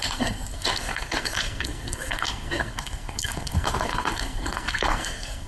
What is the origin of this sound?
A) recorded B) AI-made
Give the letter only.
B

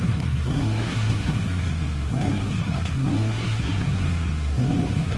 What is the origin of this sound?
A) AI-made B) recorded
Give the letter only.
A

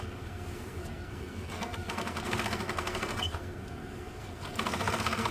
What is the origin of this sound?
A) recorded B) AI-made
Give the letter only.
B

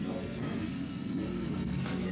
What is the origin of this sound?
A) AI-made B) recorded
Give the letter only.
A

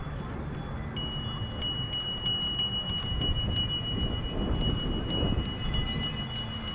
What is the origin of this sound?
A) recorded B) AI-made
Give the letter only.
A